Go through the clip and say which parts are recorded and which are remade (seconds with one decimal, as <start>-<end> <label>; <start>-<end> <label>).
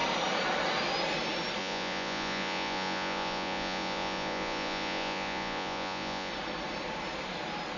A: 0.0-1.6 recorded; 1.6-6.3 remade; 6.3-7.8 recorded